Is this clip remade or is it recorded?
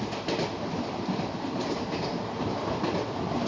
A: recorded